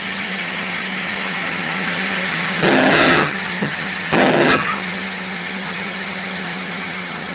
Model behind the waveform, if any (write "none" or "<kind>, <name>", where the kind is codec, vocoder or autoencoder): vocoder, HiFi-GAN